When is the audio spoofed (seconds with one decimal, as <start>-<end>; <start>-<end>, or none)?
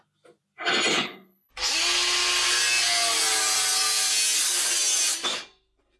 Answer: 0.9-1.5